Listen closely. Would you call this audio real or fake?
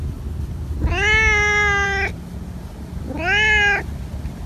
real